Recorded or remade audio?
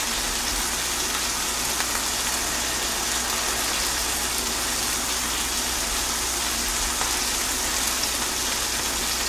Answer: recorded